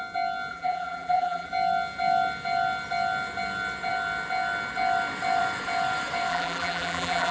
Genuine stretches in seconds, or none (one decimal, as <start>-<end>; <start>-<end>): 0.0-0.5; 1.5-6.3